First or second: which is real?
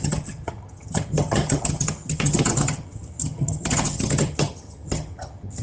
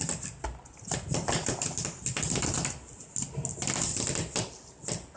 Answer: second